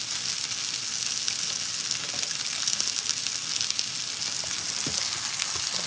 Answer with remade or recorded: recorded